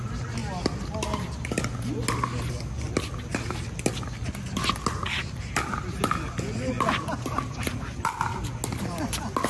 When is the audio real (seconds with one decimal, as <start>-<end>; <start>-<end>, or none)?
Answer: 0.0-9.5